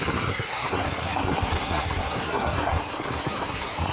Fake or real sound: fake